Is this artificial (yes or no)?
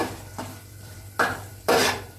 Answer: yes